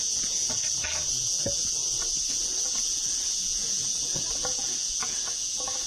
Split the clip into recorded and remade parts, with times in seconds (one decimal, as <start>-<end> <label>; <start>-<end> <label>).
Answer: 0.0-0.6 remade; 0.6-1.1 recorded; 1.1-1.8 remade; 1.8-2.3 recorded; 2.3-5.9 remade